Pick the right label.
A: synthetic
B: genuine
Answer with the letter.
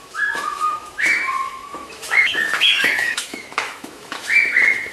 A